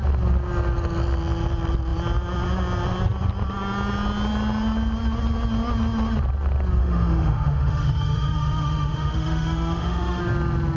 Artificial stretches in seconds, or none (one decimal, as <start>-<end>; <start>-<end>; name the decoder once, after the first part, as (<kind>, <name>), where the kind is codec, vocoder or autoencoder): 6.8-10.2 (autoencoder, DAC-VAE)